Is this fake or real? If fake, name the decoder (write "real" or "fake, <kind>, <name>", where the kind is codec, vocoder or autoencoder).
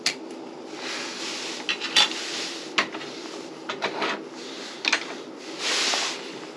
real